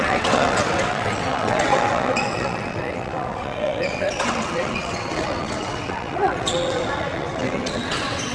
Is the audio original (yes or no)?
no